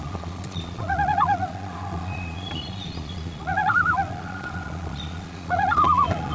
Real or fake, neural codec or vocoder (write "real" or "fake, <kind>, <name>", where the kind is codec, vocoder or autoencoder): fake, vocoder, Vocos